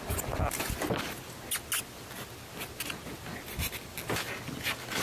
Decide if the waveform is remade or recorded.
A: recorded